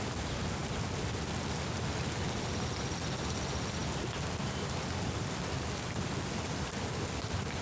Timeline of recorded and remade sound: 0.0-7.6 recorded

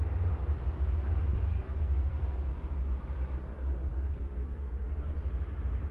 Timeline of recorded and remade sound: 0.0-1.5 recorded; 1.5-2.5 remade; 2.5-3.9 recorded; 3.9-4.9 remade; 4.9-5.9 recorded

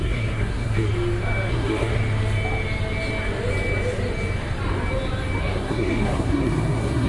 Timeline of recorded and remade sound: 0.0-0.9 remade; 0.9-1.5 recorded; 1.5-2.0 remade; 2.0-5.4 recorded; 5.4-7.1 remade

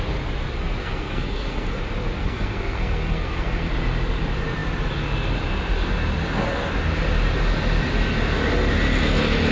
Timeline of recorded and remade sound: 0.0-0.8 recorded; 0.8-1.8 remade; 1.8-2.2 recorded; 2.2-3.7 remade; 3.7-9.5 recorded